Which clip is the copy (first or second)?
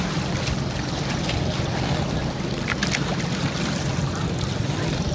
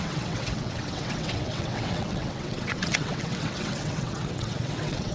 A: second